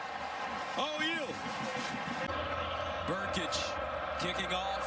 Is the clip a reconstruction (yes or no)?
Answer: no